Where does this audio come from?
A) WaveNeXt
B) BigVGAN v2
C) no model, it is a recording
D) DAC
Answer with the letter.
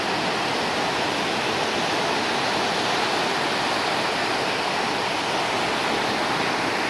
C